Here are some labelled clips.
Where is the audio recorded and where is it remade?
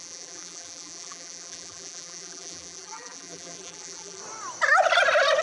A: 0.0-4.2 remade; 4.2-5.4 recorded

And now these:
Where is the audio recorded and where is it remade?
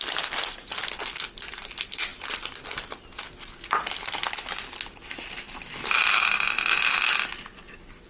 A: 0.0-8.1 recorded